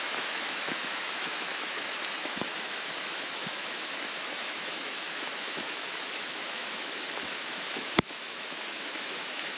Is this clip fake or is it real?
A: fake